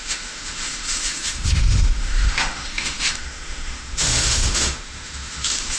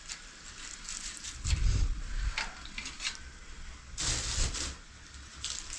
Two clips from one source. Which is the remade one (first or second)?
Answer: first